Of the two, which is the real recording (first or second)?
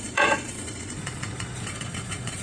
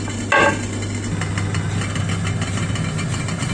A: second